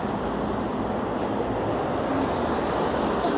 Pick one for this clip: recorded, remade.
recorded